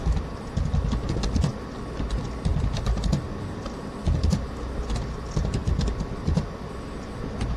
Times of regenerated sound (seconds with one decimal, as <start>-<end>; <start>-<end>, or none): none